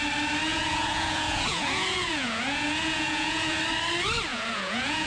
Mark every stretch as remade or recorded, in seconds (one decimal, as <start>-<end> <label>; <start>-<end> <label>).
0.0-0.5 recorded; 0.5-3.6 remade; 3.6-4.3 recorded; 4.3-5.1 remade